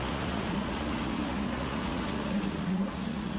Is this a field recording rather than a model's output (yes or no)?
no